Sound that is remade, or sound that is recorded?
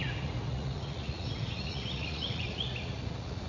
remade